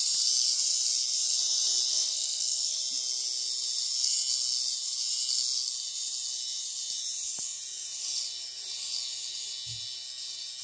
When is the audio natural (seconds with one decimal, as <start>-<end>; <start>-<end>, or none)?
0.0-1.9; 2.8-10.6